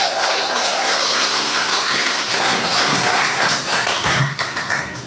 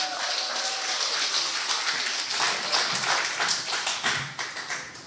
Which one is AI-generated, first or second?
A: first